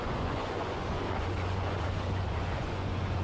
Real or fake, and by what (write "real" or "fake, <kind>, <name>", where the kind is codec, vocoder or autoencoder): fake, vocoder, Vocos